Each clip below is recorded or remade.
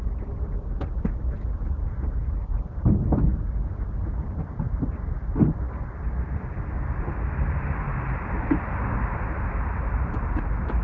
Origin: recorded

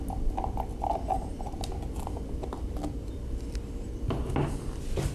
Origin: recorded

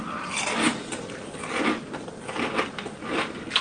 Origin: recorded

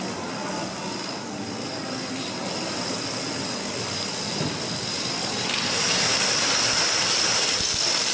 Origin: recorded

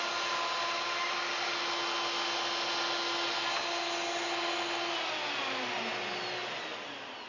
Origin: recorded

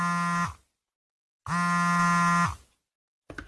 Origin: recorded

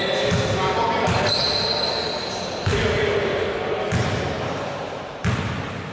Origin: recorded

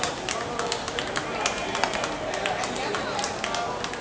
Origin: recorded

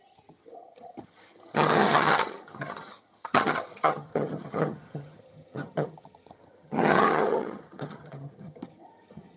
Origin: remade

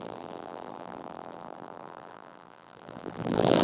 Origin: remade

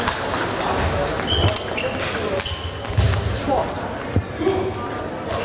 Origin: recorded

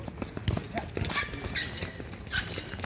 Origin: recorded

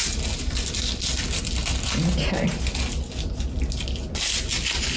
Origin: recorded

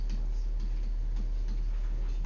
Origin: recorded